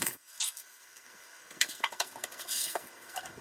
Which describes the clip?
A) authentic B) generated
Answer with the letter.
B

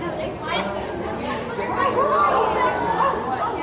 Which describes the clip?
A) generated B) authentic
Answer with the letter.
B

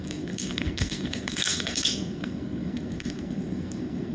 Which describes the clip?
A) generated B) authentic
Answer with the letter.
A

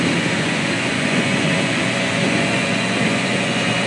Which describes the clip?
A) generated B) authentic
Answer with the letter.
A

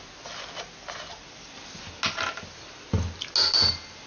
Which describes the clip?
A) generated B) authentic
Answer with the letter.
B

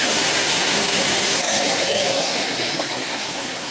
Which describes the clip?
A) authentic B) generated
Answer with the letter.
B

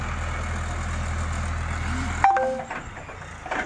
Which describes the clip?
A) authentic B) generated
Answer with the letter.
A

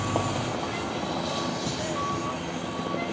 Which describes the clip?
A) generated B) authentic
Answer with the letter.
B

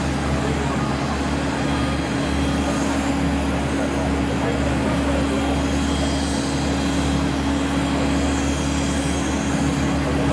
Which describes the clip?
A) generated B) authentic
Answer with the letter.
B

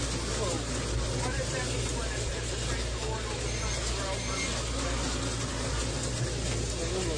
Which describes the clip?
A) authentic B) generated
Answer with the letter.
A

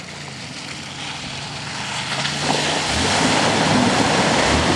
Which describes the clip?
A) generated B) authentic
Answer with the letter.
B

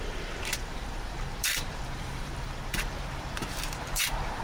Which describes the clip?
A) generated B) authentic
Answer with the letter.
A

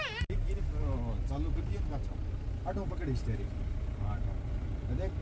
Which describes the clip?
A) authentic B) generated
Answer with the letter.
A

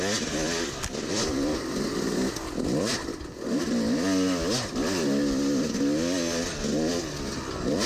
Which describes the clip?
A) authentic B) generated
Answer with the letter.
A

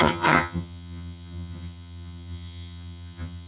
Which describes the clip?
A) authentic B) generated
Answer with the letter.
B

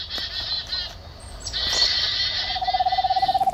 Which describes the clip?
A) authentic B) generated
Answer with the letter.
A